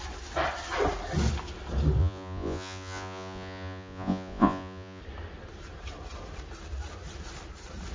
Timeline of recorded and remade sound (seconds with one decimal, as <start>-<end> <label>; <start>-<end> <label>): 0.0-2.0 recorded; 2.0-5.0 remade; 5.0-7.9 recorded